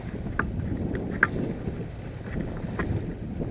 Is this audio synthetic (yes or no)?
no